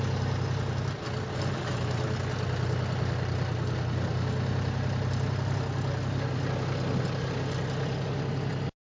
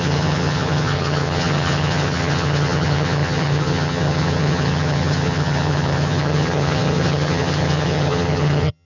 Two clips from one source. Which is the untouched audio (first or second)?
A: first